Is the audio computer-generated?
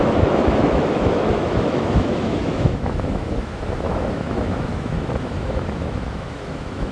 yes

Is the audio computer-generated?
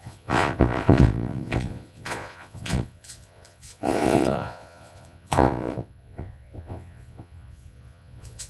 yes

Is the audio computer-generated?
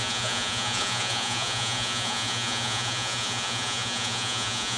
yes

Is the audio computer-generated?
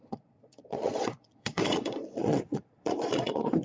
yes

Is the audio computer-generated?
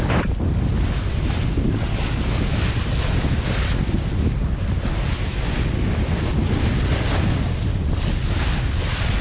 no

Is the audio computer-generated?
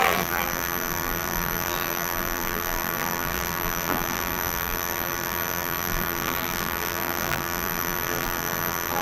yes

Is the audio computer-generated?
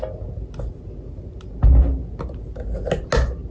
no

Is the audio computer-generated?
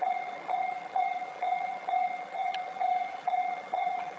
yes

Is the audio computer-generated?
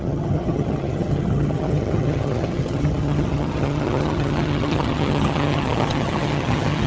yes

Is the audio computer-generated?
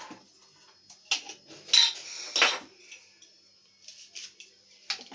no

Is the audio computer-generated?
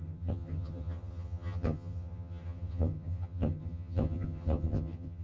yes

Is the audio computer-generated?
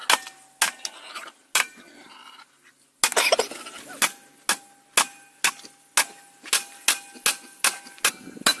no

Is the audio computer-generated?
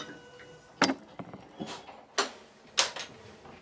no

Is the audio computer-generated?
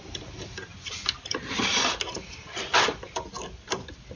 yes